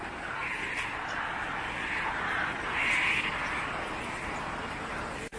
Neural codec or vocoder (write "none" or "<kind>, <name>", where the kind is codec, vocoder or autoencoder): none